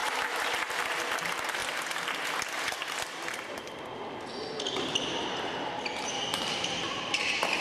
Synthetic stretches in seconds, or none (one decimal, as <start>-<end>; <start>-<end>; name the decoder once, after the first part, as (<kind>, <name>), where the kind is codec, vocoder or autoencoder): 0.0-1.6 (vocoder, BigVGAN v2); 5.8-7.6